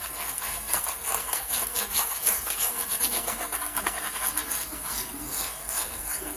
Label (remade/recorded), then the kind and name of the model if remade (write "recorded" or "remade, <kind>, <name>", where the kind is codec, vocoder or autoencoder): remade, codec, SNAC